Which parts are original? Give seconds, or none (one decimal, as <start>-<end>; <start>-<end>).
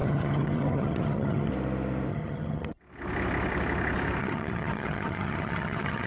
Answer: 1.5-2.1; 2.8-4.2